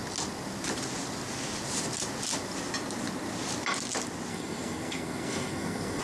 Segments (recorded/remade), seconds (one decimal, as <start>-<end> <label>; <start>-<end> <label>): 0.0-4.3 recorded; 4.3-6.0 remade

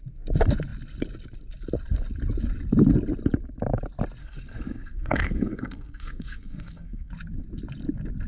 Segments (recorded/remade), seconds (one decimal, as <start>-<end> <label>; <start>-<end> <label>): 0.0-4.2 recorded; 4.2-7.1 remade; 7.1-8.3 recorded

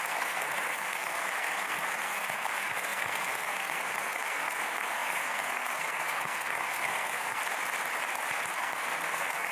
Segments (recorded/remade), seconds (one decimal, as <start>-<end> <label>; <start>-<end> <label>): 0.0-7.4 remade; 7.4-8.5 recorded; 8.5-9.5 remade

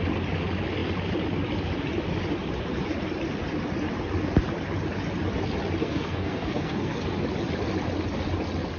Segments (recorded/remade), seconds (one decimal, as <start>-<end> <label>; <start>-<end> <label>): 0.0-5.8 recorded; 5.8-7.0 remade; 7.0-8.8 recorded